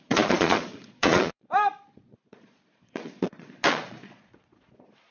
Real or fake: fake